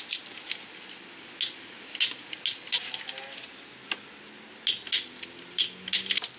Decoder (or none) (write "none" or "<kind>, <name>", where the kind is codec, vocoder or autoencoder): none